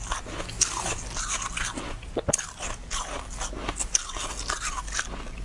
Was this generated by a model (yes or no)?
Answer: no